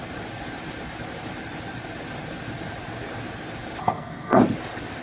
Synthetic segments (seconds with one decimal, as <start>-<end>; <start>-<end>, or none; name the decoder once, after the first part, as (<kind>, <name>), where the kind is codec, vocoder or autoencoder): 3.8-4.4 (codec, SNAC)